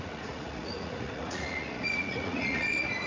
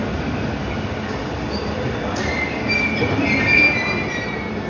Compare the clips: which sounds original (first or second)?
second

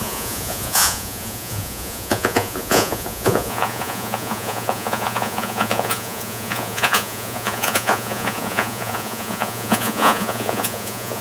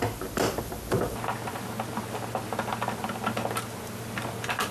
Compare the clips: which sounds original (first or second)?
second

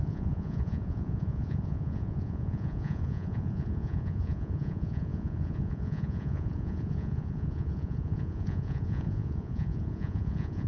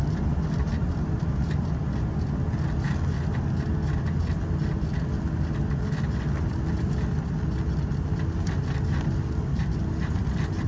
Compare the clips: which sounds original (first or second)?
second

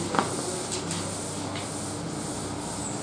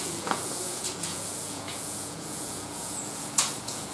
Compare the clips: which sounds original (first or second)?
first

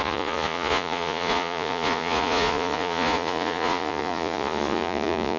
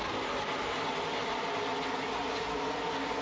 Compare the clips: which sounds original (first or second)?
second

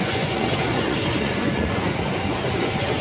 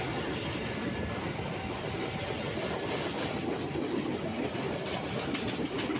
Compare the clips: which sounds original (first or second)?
second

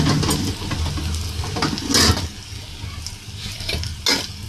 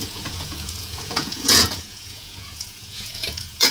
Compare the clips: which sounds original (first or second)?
first